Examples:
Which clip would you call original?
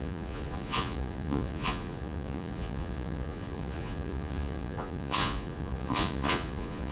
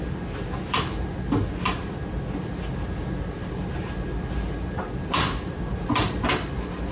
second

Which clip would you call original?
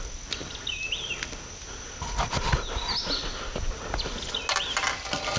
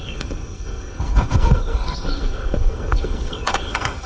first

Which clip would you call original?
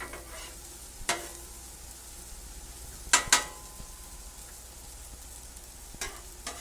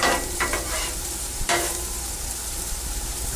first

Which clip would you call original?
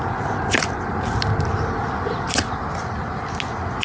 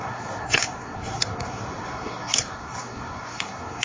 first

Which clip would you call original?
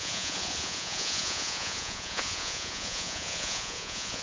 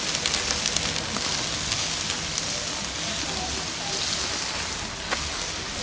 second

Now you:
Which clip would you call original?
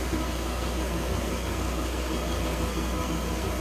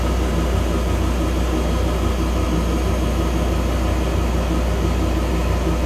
second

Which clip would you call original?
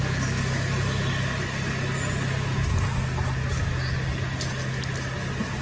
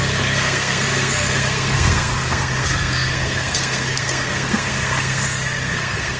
first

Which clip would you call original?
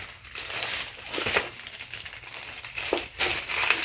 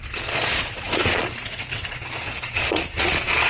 first